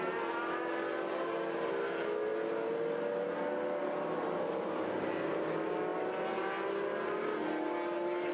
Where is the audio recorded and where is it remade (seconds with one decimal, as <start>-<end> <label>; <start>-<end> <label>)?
0.0-8.3 recorded